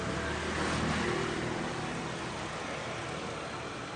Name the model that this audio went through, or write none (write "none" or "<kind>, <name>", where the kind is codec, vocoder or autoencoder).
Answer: none